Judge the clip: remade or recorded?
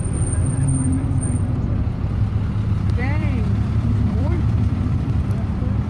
remade